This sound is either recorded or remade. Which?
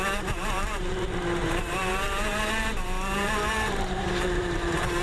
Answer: remade